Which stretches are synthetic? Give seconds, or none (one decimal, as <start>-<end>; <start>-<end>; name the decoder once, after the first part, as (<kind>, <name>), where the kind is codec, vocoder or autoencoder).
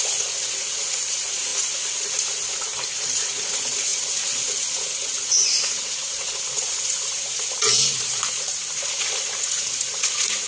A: 0.0-10.5 (vocoder, Vocos)